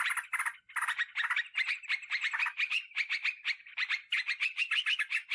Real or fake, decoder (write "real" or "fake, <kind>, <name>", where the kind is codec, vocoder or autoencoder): real